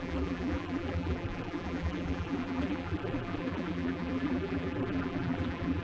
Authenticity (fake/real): fake